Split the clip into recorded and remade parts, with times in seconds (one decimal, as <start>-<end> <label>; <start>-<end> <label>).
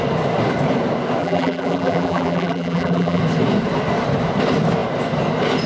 0.0-1.2 recorded; 1.2-3.2 remade; 3.2-5.7 recorded